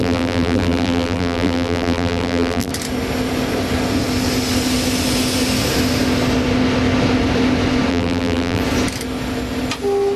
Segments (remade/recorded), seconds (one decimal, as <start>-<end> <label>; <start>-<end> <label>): 0.0-2.7 remade; 2.7-7.9 recorded; 7.9-8.6 remade; 8.6-10.2 recorded